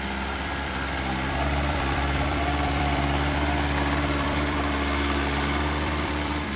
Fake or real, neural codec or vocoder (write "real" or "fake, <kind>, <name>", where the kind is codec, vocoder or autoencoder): fake, vocoder, BigVGAN v2